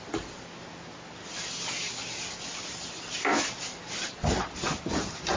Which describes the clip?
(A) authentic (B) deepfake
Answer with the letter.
A